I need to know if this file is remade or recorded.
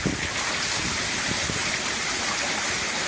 remade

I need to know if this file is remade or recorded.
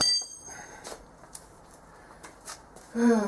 remade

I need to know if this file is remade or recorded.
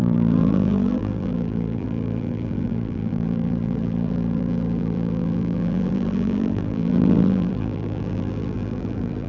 remade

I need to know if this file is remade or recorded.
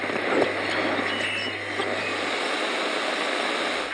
recorded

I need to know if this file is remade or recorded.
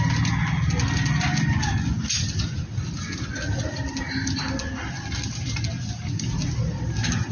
recorded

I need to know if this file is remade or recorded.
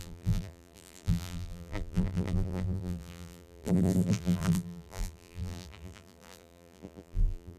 remade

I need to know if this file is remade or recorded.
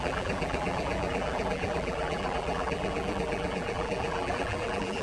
remade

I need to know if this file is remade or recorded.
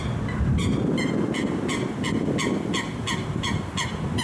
recorded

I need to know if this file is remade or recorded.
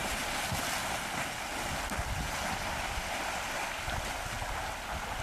recorded